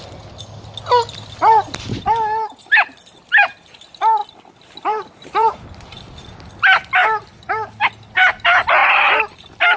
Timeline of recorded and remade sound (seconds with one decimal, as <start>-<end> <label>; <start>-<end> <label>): 0.0-4.2 recorded; 4.2-5.6 remade; 5.6-8.8 recorded; 8.8-9.8 remade